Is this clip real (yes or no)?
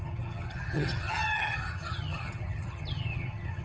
no